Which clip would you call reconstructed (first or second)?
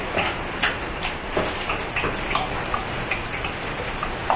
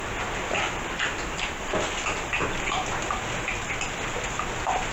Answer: first